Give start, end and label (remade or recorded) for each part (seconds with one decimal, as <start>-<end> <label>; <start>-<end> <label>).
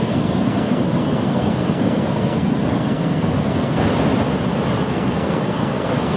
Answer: 0.0-3.9 remade; 3.9-4.9 recorded; 4.9-6.2 remade